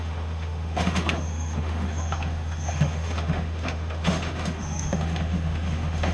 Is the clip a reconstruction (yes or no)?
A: yes